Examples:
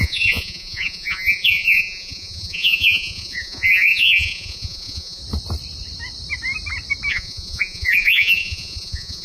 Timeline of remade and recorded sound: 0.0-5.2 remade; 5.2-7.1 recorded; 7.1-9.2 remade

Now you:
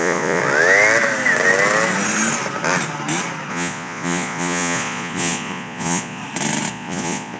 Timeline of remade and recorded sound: 0.0-0.4 remade; 0.4-3.5 recorded; 3.5-6.2 remade; 6.2-6.7 recorded; 6.7-7.4 remade

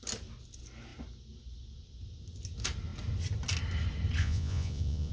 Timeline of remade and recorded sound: 0.0-4.2 recorded; 4.2-5.1 remade